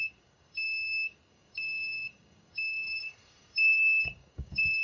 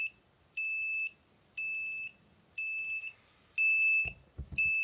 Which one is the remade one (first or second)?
first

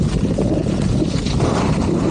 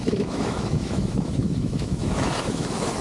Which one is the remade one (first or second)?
second